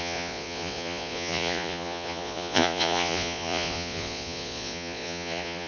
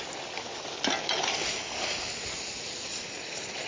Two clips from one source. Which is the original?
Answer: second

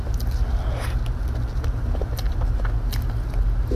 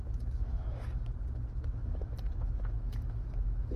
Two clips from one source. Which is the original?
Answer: first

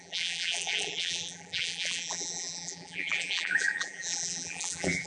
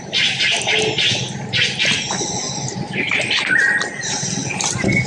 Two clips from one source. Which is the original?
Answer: second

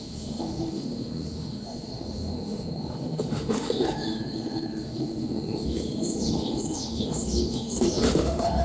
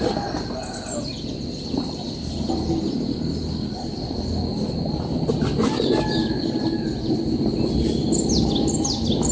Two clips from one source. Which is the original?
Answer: second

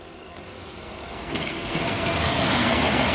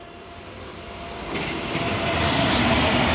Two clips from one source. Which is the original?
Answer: second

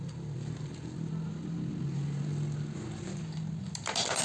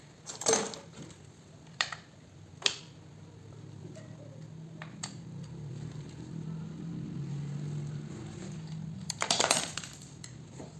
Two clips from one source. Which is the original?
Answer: first